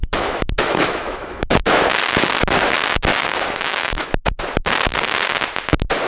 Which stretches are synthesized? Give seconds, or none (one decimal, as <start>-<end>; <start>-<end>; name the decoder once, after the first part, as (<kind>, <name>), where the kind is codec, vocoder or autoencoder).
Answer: 0.0-1.5 (autoencoder, DAC-VAE); 3.1-4.1